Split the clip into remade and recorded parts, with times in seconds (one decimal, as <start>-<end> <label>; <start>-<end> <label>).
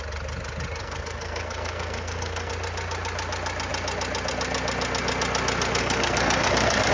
0.0-0.8 recorded; 0.8-2.5 remade; 2.5-5.8 recorded; 5.8-6.9 remade